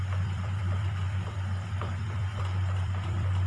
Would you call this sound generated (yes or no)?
yes